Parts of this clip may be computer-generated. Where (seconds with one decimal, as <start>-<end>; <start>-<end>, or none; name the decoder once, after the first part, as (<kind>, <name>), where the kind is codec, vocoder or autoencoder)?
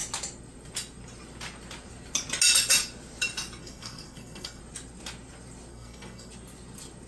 3.6-4.6 (codec, SNAC); 5.7-6.3